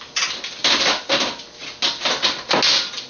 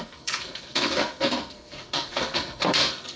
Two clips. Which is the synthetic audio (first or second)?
second